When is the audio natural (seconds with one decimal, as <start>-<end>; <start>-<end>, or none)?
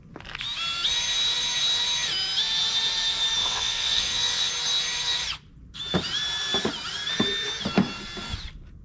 0.0-3.4; 4.5-8.8